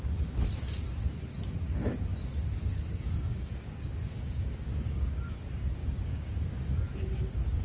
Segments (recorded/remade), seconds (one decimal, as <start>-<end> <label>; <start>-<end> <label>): 0.0-2.1 recorded; 2.1-5.2 remade; 5.2-5.8 recorded; 5.8-7.6 remade